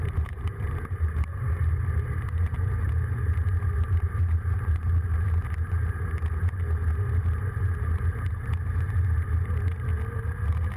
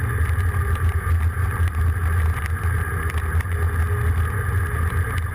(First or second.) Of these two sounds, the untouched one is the second